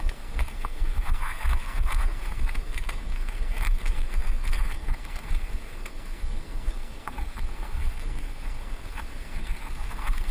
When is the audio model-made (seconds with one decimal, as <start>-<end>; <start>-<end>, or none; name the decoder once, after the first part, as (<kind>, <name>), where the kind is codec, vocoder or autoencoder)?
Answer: 0.0-10.3 (codec, SNAC)